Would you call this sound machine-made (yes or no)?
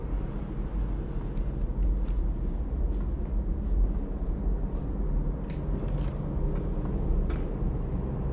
no